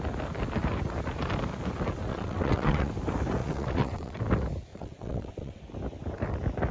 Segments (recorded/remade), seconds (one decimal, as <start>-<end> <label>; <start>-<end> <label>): 0.0-2.1 recorded; 2.1-2.9 remade; 2.9-3.4 recorded; 3.4-4.2 remade; 4.2-4.7 recorded; 4.7-5.6 remade; 5.6-6.7 recorded